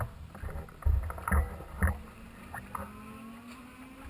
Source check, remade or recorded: recorded